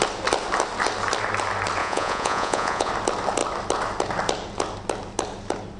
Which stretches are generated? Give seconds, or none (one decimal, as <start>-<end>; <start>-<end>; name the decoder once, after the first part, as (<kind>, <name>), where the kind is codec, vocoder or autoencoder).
1.8-2.9 (vocoder, Vocos)